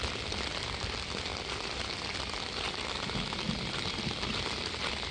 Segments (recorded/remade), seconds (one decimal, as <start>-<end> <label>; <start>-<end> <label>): 0.0-5.1 recorded